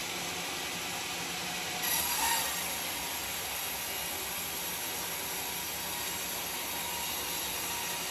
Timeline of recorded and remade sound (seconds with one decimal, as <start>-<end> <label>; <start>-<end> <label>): 0.0-8.1 recorded